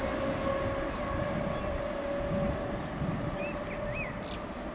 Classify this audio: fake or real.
real